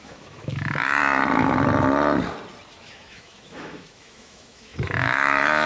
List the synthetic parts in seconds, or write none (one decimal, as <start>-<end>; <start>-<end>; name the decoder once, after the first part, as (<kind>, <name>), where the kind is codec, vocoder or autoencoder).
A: 0.0-1.0 (autoencoder, DAC-VAE); 2.7-5.7